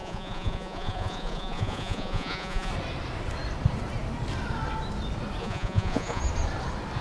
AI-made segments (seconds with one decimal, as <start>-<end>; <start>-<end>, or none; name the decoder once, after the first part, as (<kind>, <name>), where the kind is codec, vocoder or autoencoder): 0.0-2.7 (vocoder, Vocos); 5.4-6.2